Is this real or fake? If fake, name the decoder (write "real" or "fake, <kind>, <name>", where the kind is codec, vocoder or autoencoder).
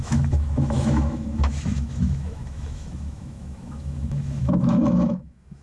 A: fake, autoencoder, DAC-VAE